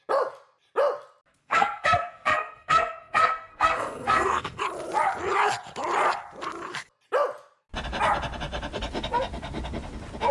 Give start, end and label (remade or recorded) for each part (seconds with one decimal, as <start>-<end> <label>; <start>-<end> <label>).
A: 0.0-1.4 recorded; 1.4-4.6 remade; 4.6-10.3 recorded